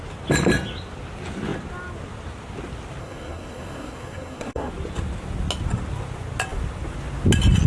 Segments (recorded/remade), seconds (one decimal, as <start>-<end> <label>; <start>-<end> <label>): 0.0-3.0 recorded; 3.0-4.7 remade; 4.7-7.7 recorded